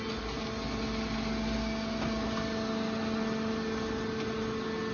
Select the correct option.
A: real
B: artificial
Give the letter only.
A